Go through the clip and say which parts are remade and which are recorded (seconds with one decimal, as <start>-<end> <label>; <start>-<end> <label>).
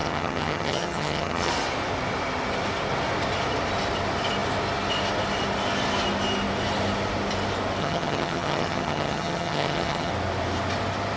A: 0.0-1.5 remade; 1.5-7.8 recorded; 7.8-10.1 remade; 10.1-11.2 recorded